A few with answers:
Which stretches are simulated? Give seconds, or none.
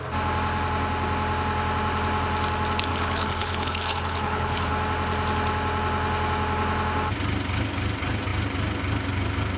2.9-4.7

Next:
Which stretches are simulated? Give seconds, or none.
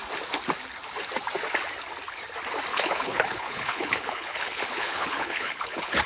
2.7-6.1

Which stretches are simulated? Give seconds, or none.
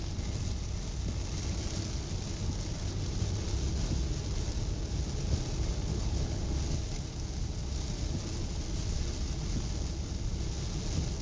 5.9-6.4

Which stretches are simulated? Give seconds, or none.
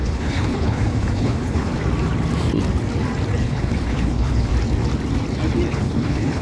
0.0-1.7; 3.4-4.5; 5.7-6.4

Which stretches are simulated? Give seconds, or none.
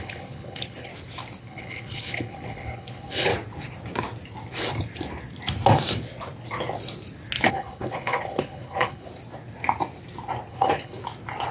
0.0-0.9; 1.4-3.3; 7.5-9.1; 10.5-11.0